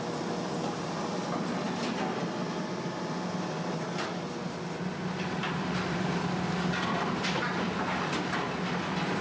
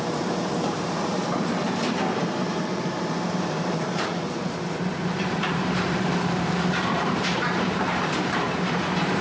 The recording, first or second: first